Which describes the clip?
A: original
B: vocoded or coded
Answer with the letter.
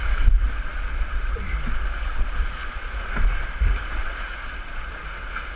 A